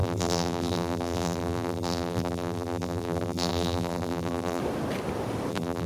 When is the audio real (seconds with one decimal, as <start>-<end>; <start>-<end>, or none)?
4.6-5.5